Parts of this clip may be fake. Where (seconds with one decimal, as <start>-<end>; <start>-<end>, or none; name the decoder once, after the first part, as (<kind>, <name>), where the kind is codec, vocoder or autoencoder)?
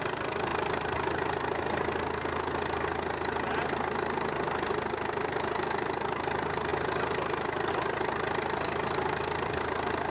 none